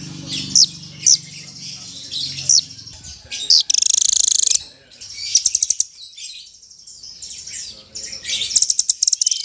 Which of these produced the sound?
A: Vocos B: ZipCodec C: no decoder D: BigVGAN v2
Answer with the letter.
C